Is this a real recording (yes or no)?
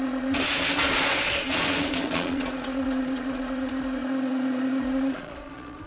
no